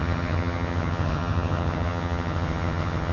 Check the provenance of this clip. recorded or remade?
remade